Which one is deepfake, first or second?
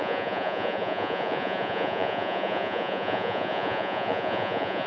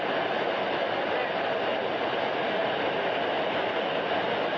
first